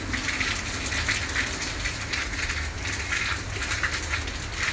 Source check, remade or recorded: recorded